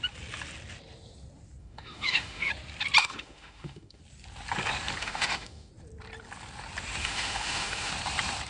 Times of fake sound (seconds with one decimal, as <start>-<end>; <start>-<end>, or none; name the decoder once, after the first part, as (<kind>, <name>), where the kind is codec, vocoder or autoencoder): 1.6-2.5 (autoencoder, DAC-VAE); 3.0-4.0; 5.0-5.7; 7.0-7.9